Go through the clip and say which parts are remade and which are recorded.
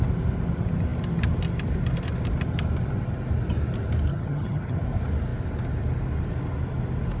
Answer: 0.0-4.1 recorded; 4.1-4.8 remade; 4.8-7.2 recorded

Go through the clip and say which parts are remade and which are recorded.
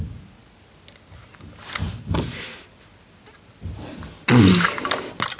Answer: 0.0-5.4 recorded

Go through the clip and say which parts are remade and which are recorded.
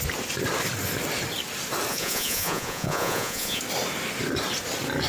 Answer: 0.0-1.9 recorded; 1.9-3.6 remade; 3.6-5.1 recorded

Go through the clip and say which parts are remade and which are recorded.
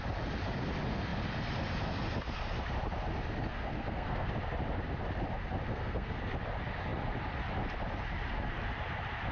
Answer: 0.0-3.5 recorded; 3.5-4.3 remade; 4.3-5.7 recorded; 5.7-6.2 remade; 6.2-9.3 recorded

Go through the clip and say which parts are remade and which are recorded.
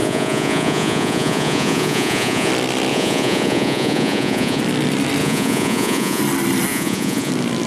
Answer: 0.0-2.5 remade; 2.5-2.9 recorded; 2.9-4.6 remade; 4.6-5.2 recorded; 5.2-6.2 remade; 6.2-6.7 recorded; 6.7-7.3 remade; 7.3-7.7 recorded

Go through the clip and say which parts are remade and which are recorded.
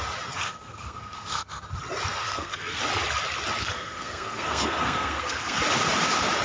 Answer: 0.0-0.4 recorded; 0.4-1.6 remade; 1.6-2.2 recorded; 2.2-2.8 remade; 2.8-3.6 recorded; 3.6-5.6 remade; 5.6-6.4 recorded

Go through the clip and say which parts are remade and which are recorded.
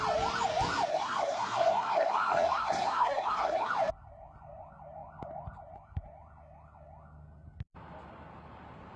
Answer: 0.0-0.9 recorded; 0.9-3.7 remade; 3.7-9.0 recorded